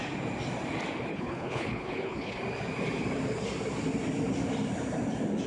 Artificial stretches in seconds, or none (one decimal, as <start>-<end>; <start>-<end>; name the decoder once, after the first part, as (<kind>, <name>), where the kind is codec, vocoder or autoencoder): 1.1-2.4 (codec, HILCodec)